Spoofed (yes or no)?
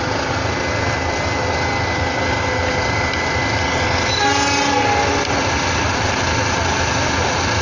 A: no